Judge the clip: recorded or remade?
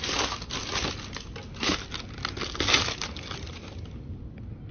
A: recorded